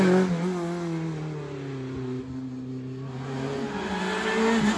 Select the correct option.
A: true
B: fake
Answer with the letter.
A